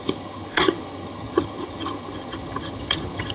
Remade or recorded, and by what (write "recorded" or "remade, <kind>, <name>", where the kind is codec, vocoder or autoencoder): remade, vocoder, HiFi-GAN